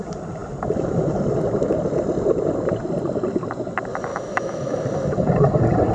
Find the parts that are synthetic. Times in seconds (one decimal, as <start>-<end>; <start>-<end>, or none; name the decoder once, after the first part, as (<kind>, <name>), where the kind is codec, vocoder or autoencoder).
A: 4.1-4.8 (autoencoder, DAC-VAE)